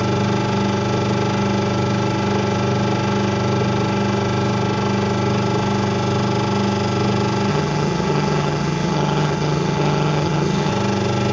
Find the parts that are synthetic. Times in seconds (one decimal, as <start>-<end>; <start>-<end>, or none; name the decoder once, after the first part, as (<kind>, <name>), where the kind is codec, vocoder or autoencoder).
7.5-10.7 (vocoder, HiFi-GAN)